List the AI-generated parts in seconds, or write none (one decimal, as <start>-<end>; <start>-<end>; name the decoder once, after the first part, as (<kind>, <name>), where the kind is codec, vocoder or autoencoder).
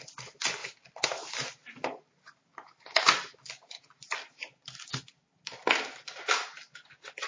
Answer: none